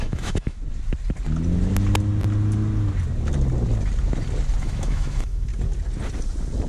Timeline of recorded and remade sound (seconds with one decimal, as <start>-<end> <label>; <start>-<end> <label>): 0.0-0.6 remade; 0.6-4.6 recorded; 4.6-5.5 remade; 5.5-6.7 recorded